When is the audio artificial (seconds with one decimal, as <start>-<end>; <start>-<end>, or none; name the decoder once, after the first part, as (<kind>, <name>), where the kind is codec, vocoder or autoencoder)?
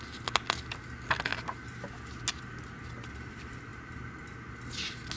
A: none